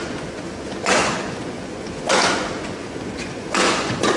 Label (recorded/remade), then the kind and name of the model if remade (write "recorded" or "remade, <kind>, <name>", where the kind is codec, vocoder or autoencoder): remade, vocoder, Vocos